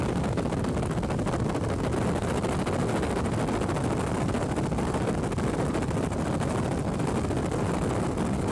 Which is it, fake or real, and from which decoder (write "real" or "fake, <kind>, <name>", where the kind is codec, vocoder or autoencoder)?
real